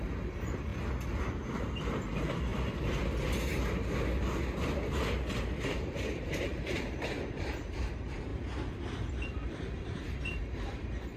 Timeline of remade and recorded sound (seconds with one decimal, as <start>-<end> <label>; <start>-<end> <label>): 0.0-0.7 remade; 0.7-1.8 recorded; 1.8-2.5 remade; 2.5-5.3 recorded; 5.3-8.3 remade; 8.3-9.1 recorded; 9.1-11.2 remade